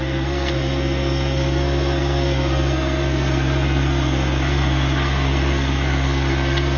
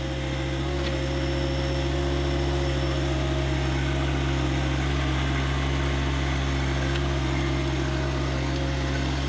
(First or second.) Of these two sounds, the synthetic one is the first